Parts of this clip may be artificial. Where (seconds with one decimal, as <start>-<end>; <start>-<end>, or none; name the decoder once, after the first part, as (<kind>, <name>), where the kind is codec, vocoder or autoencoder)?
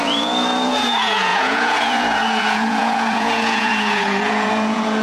0.0-5.0 (vocoder, Vocos)